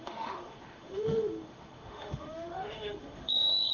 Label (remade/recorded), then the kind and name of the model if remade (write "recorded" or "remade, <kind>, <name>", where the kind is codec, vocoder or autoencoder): remade, autoencoder, DAC-VAE